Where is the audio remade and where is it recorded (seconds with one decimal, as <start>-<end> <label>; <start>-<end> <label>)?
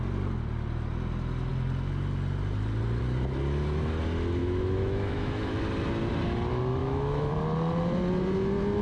0.0-4.4 recorded; 4.4-5.6 remade; 5.6-6.8 recorded; 6.8-7.3 remade; 7.3-8.8 recorded